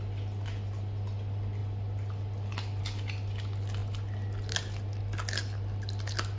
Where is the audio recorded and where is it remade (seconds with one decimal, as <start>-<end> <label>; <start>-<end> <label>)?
0.0-6.4 recorded